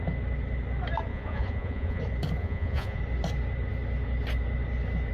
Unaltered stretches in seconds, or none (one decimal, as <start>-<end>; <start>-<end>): 0.0-1.1; 2.0-2.4; 3.0-5.1